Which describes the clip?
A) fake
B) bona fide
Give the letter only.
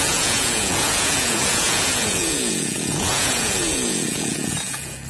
A